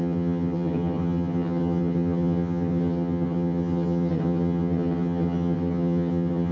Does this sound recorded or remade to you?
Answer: remade